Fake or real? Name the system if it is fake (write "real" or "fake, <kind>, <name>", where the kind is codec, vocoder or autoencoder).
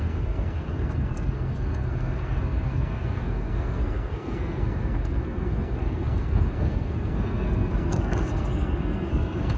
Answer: fake, codec, SNAC